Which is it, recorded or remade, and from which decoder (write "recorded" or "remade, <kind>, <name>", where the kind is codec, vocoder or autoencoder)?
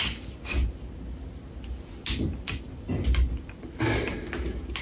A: recorded